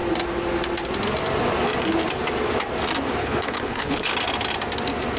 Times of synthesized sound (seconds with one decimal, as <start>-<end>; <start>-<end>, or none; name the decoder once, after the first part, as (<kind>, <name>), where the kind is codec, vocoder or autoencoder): 3.2-4.1 (codec, HILCodec)